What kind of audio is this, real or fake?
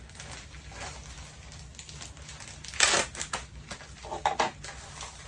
real